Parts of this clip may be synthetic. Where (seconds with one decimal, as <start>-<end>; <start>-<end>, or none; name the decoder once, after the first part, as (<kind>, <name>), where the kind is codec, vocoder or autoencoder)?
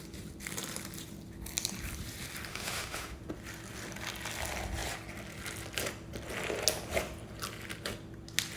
2.5-3.2 (autoencoder, DAC-VAE)